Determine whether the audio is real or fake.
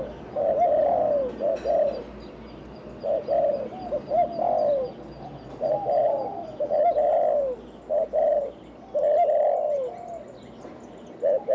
real